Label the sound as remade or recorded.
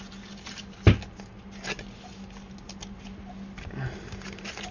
recorded